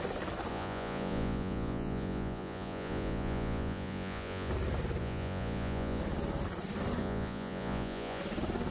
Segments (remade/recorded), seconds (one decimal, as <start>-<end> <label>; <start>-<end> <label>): 0.0-0.5 recorded; 0.5-4.5 remade; 4.5-5.0 recorded; 5.0-6.0 remade; 6.0-7.0 recorded; 7.0-8.2 remade; 8.2-8.7 recorded